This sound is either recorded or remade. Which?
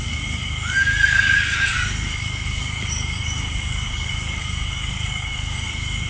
remade